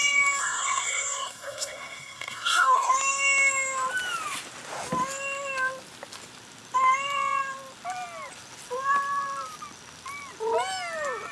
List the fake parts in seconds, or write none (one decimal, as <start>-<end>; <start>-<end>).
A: 0.4-2.9